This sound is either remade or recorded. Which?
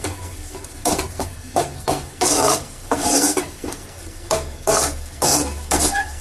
remade